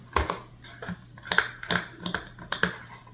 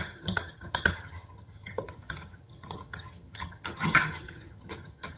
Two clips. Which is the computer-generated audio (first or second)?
second